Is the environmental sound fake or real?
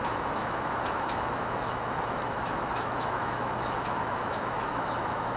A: fake